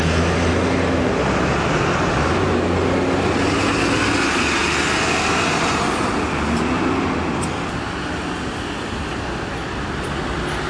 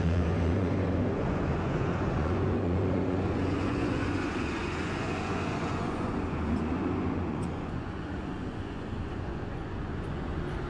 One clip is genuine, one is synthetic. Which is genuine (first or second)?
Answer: first